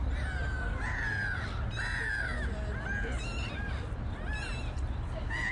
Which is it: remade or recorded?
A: recorded